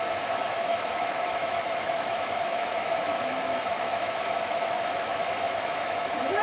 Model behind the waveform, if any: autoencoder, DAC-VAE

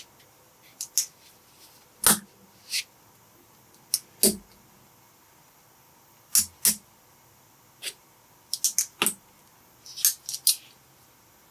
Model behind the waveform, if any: none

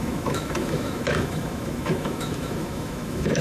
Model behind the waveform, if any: autoencoder, DAC-VAE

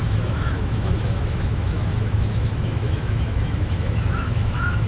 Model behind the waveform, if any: autoencoder, DAC-VAE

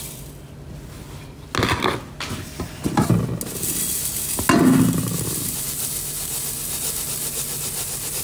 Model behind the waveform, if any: none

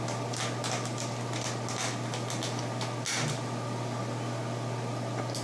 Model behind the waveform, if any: none